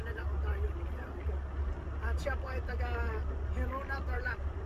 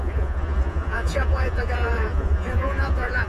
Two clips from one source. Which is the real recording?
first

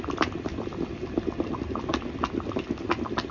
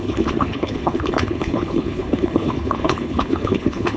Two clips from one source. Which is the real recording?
first